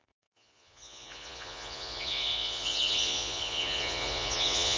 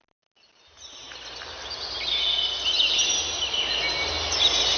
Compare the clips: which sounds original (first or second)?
second